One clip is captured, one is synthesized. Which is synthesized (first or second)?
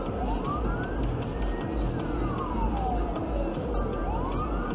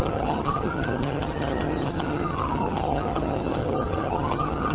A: second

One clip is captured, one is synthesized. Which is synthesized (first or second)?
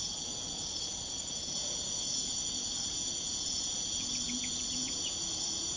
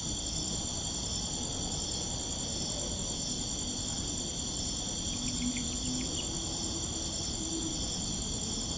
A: first